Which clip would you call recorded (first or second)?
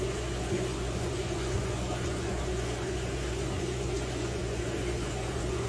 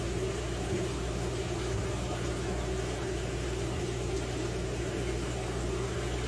second